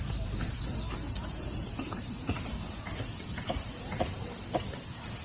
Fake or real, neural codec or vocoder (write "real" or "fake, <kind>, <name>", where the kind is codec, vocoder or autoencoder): fake, vocoder, BigVGAN v2